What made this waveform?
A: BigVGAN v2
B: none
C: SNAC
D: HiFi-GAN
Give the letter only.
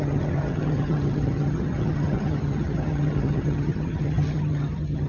D